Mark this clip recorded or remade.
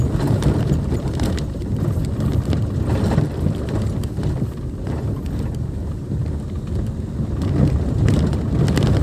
recorded